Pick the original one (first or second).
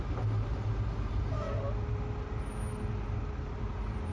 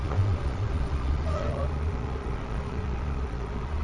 first